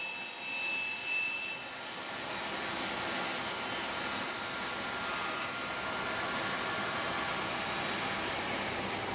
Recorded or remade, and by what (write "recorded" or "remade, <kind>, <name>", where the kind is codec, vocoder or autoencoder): recorded